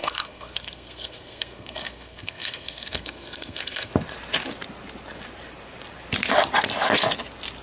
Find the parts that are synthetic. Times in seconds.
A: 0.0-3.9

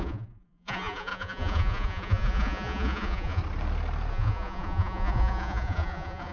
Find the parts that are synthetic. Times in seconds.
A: 0.0-3.4; 4.1-6.3

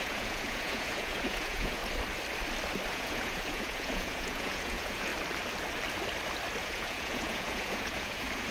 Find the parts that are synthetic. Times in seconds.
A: 0.0-1.8; 2.9-5.1; 6.6-8.5

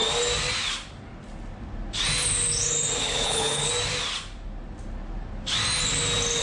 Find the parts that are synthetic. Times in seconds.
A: 3.0-3.7

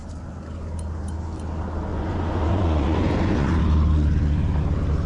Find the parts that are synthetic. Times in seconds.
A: 1.9-3.6